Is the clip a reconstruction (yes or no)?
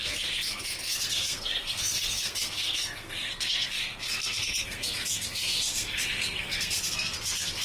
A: yes